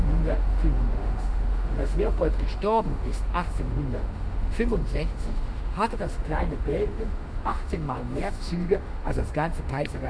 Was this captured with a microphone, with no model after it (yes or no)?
no